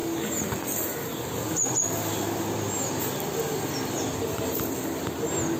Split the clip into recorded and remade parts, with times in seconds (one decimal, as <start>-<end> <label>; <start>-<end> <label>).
0.0-1.1 remade; 1.1-1.6 recorded; 1.6-5.0 remade; 5.0-5.6 recorded

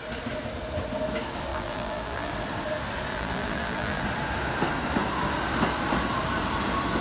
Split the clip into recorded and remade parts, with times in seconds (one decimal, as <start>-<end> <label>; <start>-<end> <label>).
0.0-1.5 recorded; 1.5-2.3 remade; 2.3-3.1 recorded; 3.1-4.0 remade; 4.0-7.0 recorded

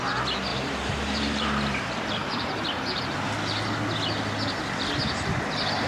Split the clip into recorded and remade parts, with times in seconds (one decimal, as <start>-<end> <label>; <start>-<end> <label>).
0.0-0.5 recorded; 0.5-3.0 remade; 3.0-5.9 recorded

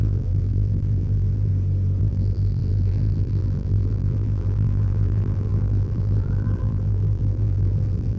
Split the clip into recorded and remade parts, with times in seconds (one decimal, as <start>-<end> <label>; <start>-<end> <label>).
0.0-1.5 remade; 1.5-2.0 recorded; 2.0-8.2 remade

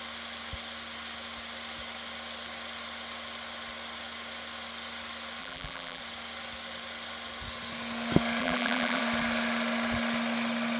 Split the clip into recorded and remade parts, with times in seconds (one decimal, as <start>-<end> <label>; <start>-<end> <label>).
0.0-5.4 recorded; 5.4-6.0 remade; 6.0-8.4 recorded; 8.4-9.0 remade; 9.0-10.8 recorded